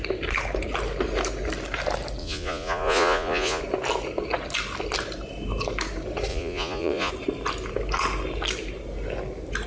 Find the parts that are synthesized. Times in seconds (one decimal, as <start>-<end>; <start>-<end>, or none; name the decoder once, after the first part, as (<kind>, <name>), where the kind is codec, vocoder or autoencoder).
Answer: 2.2-3.6 (vocoder, Vocos); 6.3-7.1